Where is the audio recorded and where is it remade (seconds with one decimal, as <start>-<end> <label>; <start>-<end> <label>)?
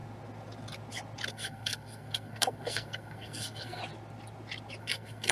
0.0-1.3 recorded; 1.3-3.8 remade; 3.8-4.8 recorded; 4.8-5.3 remade